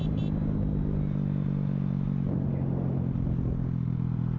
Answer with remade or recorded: recorded